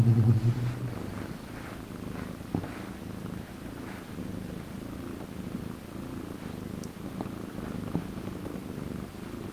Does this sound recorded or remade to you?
recorded